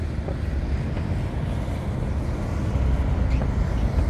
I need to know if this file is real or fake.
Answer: real